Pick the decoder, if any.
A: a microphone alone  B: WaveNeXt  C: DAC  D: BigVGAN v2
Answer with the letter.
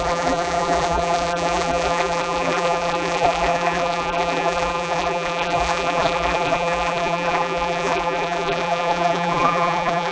D